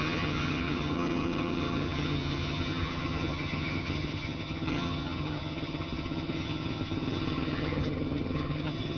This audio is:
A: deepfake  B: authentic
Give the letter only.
A